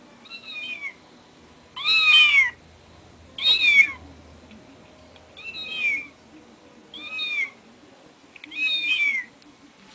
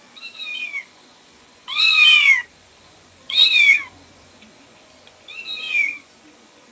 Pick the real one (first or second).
first